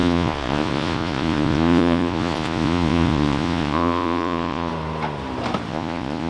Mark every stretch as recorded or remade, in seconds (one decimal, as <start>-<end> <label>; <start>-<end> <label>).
0.0-4.7 remade; 4.7-5.7 recorded; 5.7-6.3 remade